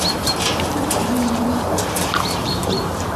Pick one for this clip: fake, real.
fake